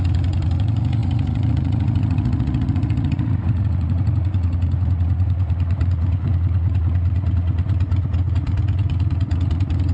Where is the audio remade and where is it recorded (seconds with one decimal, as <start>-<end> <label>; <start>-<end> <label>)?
0.0-9.9 remade